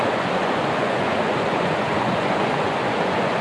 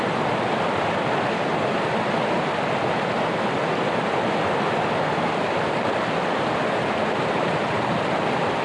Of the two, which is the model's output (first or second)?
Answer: first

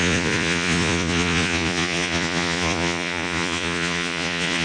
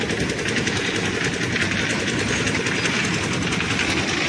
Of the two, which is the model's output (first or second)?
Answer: first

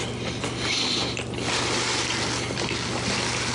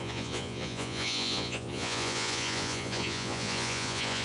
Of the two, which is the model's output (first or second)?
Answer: second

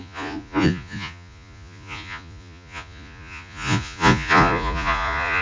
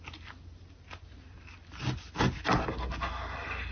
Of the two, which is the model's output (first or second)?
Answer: first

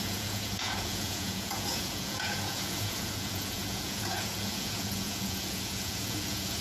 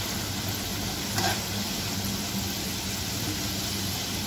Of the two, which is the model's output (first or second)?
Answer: first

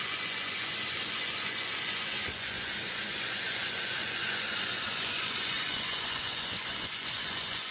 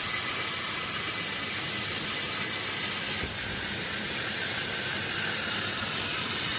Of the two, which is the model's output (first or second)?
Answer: first